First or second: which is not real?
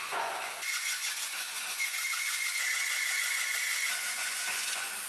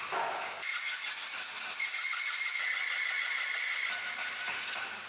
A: first